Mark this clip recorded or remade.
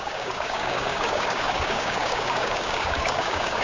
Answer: remade